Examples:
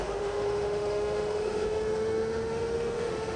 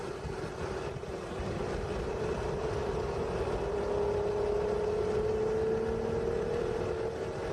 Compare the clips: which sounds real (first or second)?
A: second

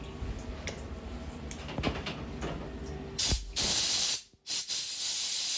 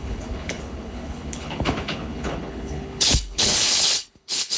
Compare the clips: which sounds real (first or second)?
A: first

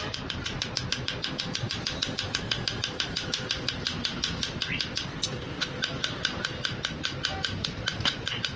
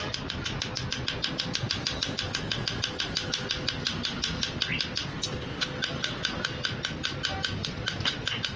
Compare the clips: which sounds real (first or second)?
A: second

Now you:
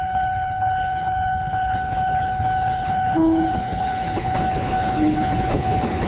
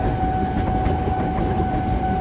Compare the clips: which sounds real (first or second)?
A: second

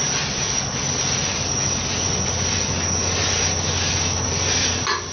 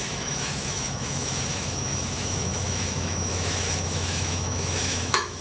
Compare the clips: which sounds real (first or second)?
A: first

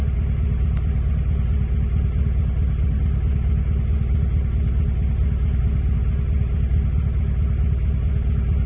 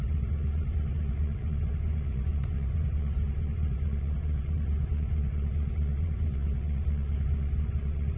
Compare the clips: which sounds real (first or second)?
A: first